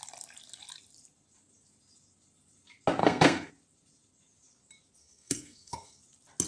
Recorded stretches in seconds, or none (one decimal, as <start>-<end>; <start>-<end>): 0.0-3.0; 3.5-5.0; 6.0-6.5